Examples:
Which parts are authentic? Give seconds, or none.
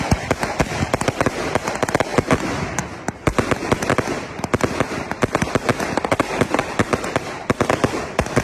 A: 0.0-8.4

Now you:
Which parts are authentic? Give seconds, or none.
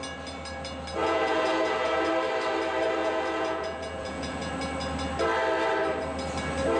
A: 0.0-1.0; 2.1-3.0; 4.5-6.8